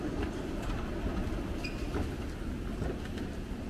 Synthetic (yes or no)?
no